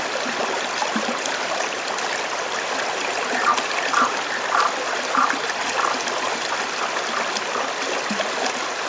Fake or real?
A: real